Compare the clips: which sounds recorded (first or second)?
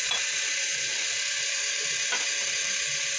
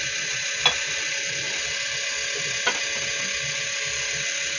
second